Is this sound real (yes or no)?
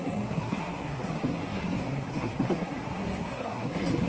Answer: no